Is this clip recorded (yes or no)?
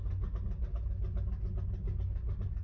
yes